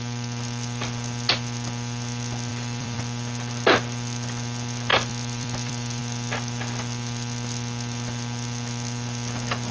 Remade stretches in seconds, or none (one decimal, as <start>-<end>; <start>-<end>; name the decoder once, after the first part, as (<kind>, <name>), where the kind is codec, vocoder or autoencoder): 2.5-3.0 (vocoder, BigVGAN v2); 4.9-6.0